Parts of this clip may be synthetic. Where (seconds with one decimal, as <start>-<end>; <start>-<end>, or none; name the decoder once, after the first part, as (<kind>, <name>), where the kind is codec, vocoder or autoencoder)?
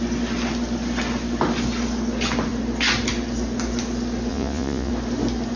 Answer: 4.3-4.9 (vocoder, Vocos)